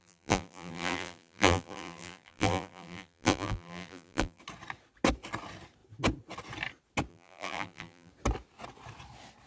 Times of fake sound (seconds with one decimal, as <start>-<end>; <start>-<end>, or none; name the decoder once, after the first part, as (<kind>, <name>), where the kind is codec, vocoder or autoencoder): 0.0-4.4 (vocoder, BigVGAN v2); 7.1-8.1